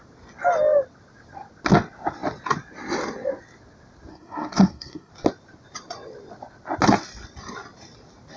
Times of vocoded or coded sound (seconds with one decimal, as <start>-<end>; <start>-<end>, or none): 4.1-5.1